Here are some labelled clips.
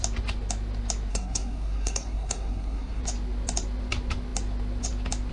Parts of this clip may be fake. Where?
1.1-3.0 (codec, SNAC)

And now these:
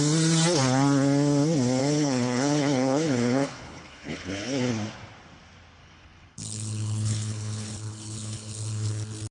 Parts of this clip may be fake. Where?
1.8-4.7 (codec, HILCodec); 5.8-8.9

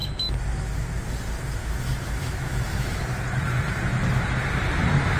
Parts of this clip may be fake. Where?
0.0-1.0 (autoencoder, DAC-VAE); 1.6-3.0

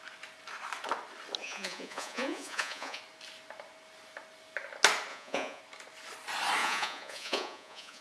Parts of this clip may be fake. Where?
1.4-3.0 (vocoder, Vocos); 5.1-5.6; 6.6-8.0

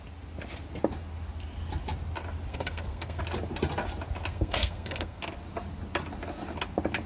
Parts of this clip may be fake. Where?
2.5-3.2 (codec, SNAC); 4.3-5.2

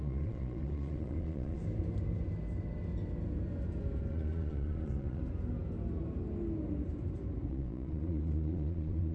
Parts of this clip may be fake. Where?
0.0-1.6 (vocoder, Vocos); 4.1-5.2; 7.5-9.1

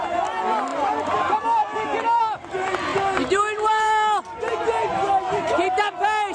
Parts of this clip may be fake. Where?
0.7-1.2 (vocoder, BigVGAN v2); 2.9-4.2; 4.9-5.8